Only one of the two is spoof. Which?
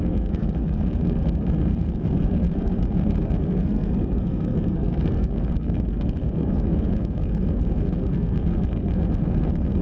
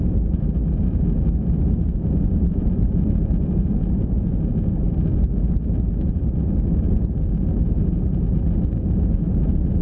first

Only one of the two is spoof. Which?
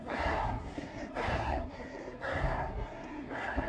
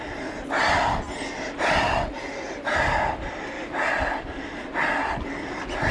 first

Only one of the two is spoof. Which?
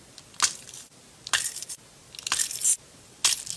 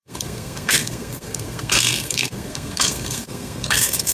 second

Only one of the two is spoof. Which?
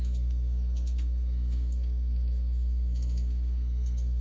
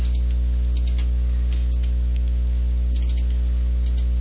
first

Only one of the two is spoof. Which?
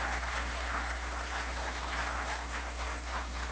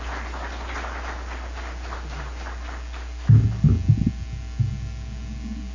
first